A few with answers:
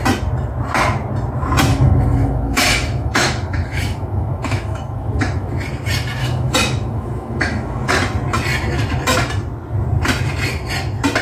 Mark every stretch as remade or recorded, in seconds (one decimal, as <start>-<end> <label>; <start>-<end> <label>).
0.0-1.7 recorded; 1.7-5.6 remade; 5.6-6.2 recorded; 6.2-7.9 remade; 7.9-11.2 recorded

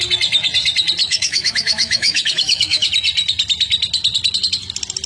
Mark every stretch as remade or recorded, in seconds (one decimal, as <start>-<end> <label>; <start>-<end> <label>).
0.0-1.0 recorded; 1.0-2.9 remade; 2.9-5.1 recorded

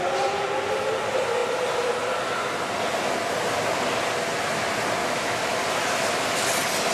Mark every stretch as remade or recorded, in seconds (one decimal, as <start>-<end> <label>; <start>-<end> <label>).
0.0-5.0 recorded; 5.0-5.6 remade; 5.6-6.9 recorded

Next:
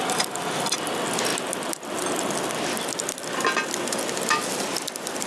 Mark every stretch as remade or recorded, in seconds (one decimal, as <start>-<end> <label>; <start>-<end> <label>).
0.0-5.3 recorded

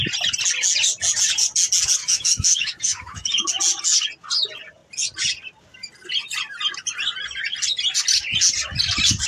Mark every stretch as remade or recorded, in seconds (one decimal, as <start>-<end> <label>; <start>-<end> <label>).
0.0-2.0 recorded; 2.0-3.5 remade; 3.5-9.3 recorded

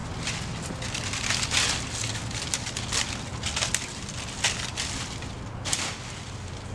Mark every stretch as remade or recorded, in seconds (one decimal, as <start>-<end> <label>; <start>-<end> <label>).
0.0-6.7 recorded

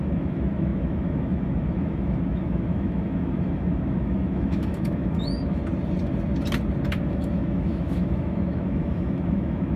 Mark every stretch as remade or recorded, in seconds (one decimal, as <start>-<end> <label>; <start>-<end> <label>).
0.0-5.6 remade; 5.6-7.0 recorded; 7.0-9.8 remade